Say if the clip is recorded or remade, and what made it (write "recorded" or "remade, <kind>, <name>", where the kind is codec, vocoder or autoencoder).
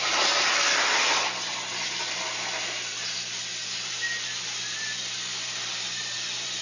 recorded